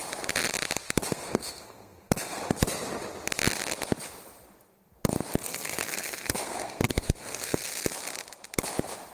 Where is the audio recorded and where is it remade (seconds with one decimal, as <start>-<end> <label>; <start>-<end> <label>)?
0.0-1.1 recorded; 1.1-2.4 remade; 2.4-5.5 recorded; 5.5-7.7 remade; 7.7-9.1 recorded